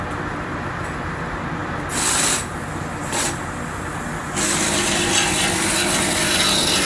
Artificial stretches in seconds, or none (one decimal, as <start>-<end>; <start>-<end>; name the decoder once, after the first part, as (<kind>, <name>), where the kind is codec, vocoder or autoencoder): none

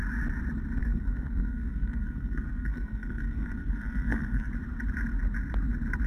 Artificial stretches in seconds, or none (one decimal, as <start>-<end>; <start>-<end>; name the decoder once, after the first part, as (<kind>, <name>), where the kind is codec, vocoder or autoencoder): 0.8-4.5 (codec, SNAC)

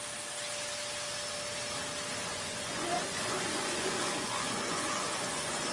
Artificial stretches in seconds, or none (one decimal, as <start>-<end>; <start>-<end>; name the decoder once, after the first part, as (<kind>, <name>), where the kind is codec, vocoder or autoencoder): 2.3-5.7 (vocoder, Vocos)

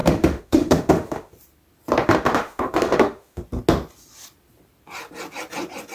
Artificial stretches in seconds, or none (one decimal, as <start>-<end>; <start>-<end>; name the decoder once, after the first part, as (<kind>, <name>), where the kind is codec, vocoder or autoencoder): 0.0-1.3 (autoencoder, DAC-VAE); 2.0-3.4

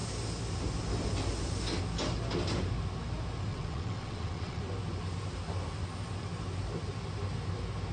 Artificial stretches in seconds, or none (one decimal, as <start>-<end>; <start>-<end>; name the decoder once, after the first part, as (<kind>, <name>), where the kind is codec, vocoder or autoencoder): 3.5-4.6 (vocoder, WaveNeXt)